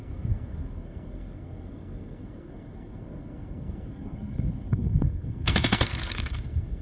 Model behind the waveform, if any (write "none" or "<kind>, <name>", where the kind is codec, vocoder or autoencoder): codec, SNAC